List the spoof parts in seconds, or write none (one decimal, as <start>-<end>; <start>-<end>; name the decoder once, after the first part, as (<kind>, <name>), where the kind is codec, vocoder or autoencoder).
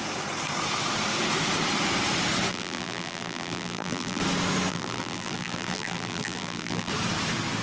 2.5-4.2 (vocoder, BigVGAN v2); 4.7-6.9